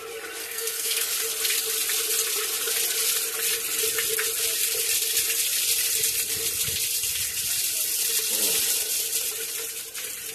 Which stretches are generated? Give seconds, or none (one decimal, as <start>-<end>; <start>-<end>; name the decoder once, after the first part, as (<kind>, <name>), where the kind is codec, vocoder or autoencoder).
0.4-1.1 (codec, SNAC)